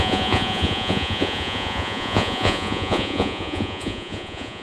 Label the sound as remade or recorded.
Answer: remade